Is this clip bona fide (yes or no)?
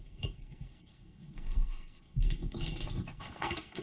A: no